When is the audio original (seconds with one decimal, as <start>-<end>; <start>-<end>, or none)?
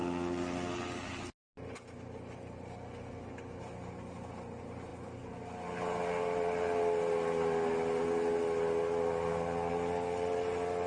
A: 0.0-10.9